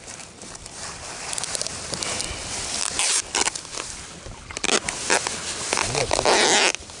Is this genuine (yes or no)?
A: yes